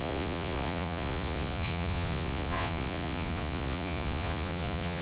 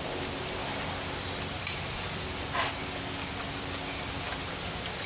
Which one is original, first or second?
second